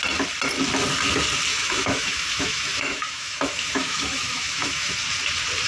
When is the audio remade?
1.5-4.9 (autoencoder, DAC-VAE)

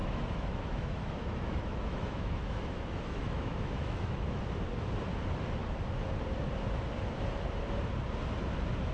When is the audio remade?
0.0-4.4 (autoencoder, DAC-VAE)

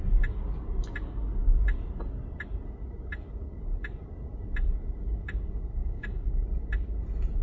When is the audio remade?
5.8-6.3 (codec, DAC)